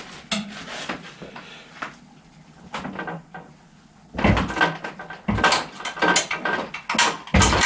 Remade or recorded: recorded